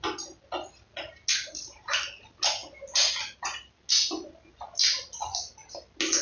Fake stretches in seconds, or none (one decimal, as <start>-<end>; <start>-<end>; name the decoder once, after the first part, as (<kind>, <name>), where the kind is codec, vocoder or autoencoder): 1.3-2.1 (vocoder, BigVGAN v2)